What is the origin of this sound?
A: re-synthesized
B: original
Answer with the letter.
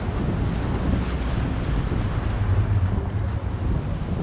B